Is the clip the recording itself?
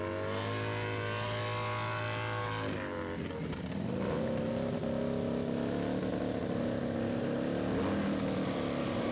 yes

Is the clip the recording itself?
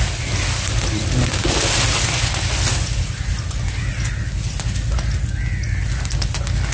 yes